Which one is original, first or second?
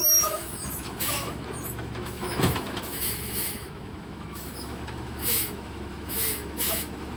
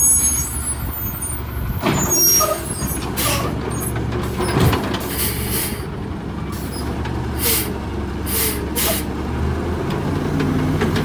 second